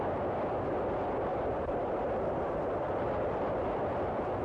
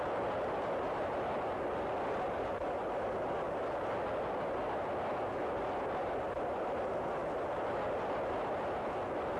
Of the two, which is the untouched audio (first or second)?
second